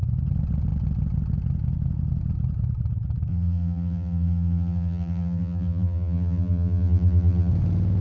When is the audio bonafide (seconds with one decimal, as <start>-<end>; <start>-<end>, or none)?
0.0-3.3; 7.5-8.0